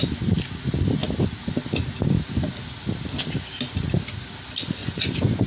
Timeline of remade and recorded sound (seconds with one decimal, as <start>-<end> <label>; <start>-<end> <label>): 0.0-4.8 recorded; 4.8-5.5 remade